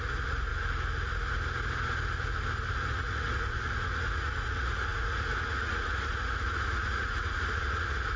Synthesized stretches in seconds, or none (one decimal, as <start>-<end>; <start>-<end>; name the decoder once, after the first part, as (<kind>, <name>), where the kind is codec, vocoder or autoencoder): 0.0-0.5 (vocoder, Vocos); 2.7-8.2